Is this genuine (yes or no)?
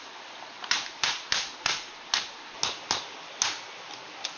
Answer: yes